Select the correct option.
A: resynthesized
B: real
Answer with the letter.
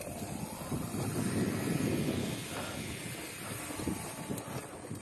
B